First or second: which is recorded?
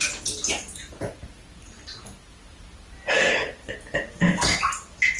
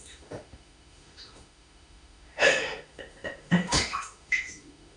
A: first